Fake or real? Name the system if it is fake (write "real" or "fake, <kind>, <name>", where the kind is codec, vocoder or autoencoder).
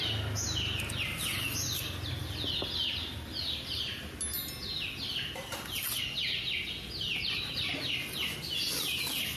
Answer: real